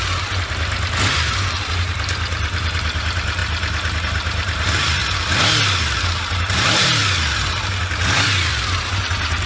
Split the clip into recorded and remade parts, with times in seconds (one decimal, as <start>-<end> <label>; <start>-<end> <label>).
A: 0.0-3.4 remade; 3.4-4.0 recorded; 4.0-5.0 remade; 5.0-6.0 recorded; 6.0-7.0 remade; 7.0-9.1 recorded; 9.1-9.5 remade